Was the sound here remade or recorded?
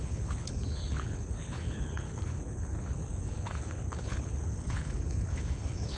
remade